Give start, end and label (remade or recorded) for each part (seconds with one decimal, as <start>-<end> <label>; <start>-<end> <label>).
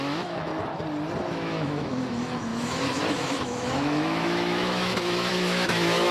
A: 0.0-0.5 remade; 0.5-1.2 recorded; 1.2-6.1 remade